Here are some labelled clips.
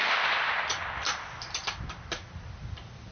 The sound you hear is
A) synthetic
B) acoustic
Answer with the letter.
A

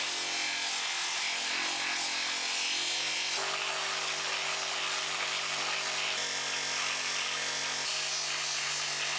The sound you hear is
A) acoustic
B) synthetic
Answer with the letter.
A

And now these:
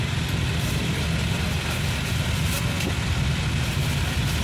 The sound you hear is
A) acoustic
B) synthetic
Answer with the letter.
A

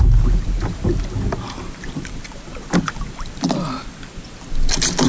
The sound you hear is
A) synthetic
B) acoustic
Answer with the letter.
B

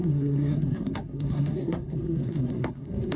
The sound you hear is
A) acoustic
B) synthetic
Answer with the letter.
B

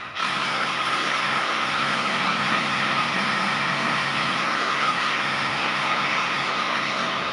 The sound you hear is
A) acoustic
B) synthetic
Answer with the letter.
B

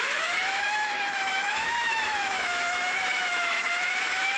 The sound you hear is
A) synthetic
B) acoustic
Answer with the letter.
A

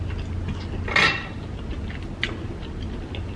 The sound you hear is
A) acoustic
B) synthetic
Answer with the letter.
A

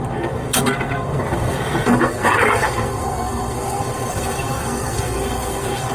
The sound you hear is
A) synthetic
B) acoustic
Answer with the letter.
A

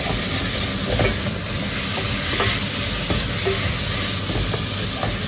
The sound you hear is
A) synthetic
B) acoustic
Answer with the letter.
B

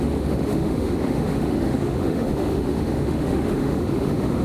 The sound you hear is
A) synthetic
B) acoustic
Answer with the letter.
A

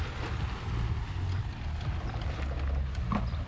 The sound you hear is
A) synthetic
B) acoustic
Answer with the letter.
B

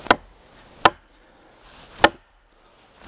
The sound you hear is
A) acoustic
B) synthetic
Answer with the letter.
A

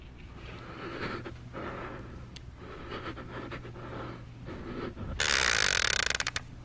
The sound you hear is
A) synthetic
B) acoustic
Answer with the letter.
B